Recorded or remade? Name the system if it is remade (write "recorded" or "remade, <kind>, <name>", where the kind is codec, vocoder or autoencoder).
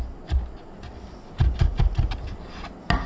recorded